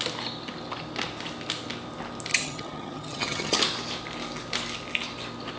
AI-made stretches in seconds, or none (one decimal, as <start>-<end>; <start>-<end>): 2.3-3.6